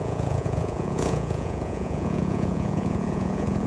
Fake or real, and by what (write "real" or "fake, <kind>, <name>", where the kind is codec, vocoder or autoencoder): fake, vocoder, Vocos